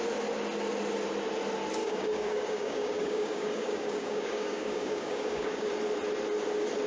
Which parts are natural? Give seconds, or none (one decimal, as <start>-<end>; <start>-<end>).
0.0-1.8; 5.7-6.9